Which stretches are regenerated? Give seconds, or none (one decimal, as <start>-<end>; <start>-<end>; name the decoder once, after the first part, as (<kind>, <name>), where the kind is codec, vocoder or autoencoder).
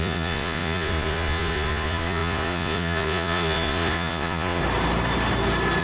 0.0-4.6 (vocoder, Vocos)